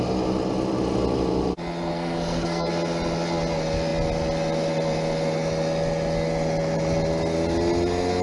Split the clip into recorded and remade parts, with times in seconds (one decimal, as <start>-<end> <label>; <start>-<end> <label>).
0.0-1.9 recorded; 1.9-2.7 remade; 2.7-8.2 recorded